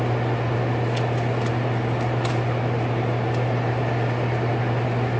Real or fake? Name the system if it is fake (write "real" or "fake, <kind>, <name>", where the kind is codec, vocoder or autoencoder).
real